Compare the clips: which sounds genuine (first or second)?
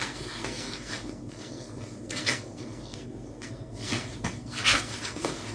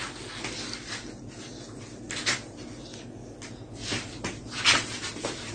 second